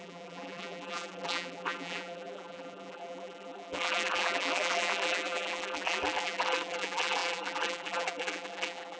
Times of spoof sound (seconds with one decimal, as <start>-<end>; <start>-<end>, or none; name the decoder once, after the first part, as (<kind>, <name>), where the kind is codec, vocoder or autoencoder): 0.0-9.0 (vocoder, BigVGAN v2)